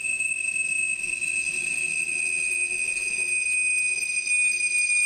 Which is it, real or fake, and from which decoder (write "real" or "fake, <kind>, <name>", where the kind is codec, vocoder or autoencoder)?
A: real